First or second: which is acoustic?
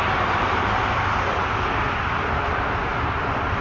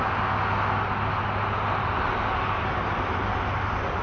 second